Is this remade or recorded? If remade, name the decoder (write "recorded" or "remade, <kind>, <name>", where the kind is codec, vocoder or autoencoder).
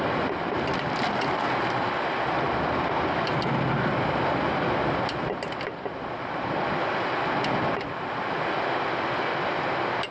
recorded